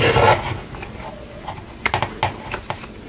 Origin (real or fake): real